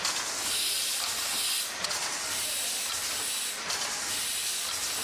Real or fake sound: real